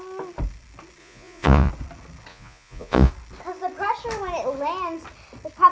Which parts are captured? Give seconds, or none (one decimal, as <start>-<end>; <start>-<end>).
0.0-1.0; 1.7-2.3; 3.1-5.7